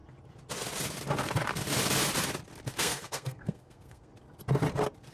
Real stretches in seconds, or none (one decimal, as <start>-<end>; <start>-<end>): 0.0-2.8; 4.1-5.1